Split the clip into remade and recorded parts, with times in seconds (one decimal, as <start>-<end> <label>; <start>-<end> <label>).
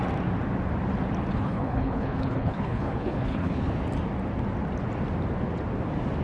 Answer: 0.0-1.3 recorded; 1.3-3.8 remade; 3.8-6.2 recorded